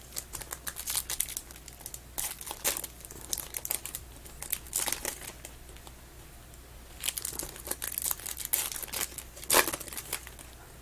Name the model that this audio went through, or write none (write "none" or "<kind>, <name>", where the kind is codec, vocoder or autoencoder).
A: none